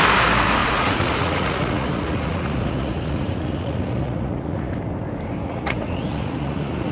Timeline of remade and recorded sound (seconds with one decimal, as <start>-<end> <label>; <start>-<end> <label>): 0.0-0.6 recorded; 0.6-4.7 remade; 4.7-5.4 recorded; 5.4-6.9 remade